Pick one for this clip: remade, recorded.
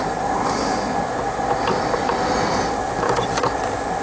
recorded